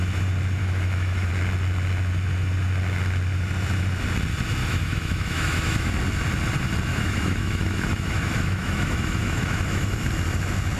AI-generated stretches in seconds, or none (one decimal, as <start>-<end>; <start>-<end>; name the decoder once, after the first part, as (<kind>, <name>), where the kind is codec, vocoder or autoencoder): 0.6-1.3 (autoencoder, DAC-VAE); 4.6-5.9; 6.9-10.1